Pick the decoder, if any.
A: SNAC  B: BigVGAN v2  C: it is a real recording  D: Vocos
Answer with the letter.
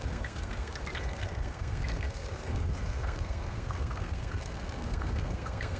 A